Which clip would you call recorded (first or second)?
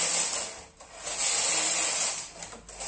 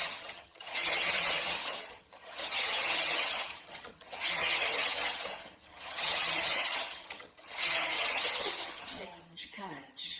first